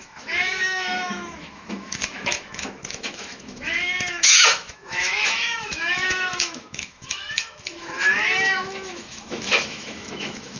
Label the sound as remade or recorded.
remade